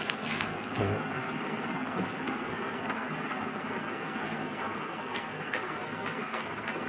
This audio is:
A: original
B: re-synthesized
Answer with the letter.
B